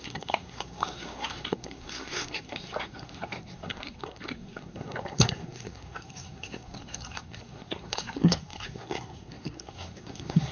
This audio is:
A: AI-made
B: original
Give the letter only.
A